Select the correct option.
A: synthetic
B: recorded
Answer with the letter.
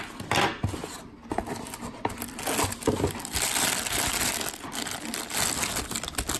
B